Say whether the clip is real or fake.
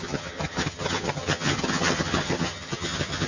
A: fake